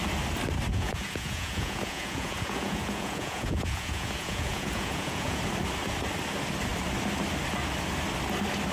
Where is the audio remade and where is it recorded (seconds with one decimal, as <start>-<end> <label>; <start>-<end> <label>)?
0.0-0.7 recorded; 0.7-5.4 remade; 5.4-8.7 recorded